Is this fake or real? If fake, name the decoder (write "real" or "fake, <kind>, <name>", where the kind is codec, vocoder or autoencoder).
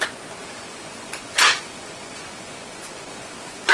fake, vocoder, Vocos